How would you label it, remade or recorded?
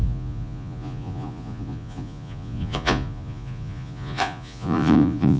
remade